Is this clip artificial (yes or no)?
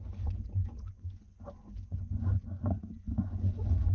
yes